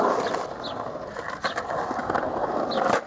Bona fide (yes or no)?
yes